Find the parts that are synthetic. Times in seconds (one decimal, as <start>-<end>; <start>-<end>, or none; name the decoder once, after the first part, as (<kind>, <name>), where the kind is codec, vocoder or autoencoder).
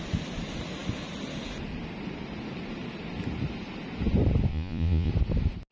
4.5-5.1 (vocoder, Vocos)